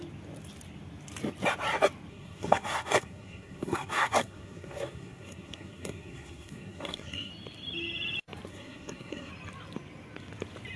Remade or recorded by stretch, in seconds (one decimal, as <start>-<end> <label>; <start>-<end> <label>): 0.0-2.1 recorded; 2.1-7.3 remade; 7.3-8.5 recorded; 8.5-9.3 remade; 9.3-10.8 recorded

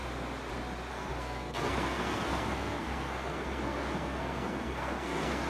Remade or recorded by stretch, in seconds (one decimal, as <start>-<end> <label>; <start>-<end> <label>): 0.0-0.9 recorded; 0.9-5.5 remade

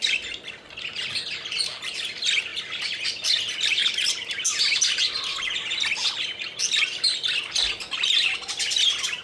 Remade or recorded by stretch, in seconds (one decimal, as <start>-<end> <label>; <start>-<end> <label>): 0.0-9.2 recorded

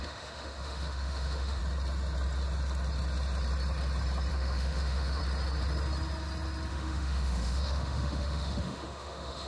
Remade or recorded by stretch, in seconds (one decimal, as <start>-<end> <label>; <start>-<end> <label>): 0.0-1.6 remade; 1.6-4.3 recorded; 4.3-5.2 remade; 5.2-6.7 recorded; 6.7-9.5 remade

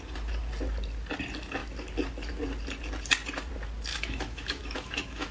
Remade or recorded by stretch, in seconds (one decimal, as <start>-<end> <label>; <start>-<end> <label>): 0.0-3.9 recorded; 3.9-5.3 remade

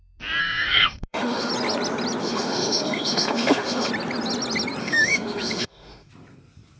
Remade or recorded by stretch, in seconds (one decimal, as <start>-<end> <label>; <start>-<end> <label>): 0.0-0.4 recorded; 0.4-1.5 remade; 1.5-2.2 recorded; 2.2-3.9 remade; 3.9-4.8 recorded; 4.8-6.1 remade; 6.1-6.8 recorded

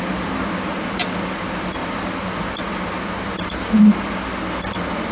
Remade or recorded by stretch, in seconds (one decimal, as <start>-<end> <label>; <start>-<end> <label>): 0.0-5.1 recorded